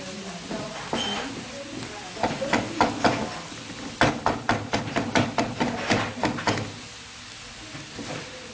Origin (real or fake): real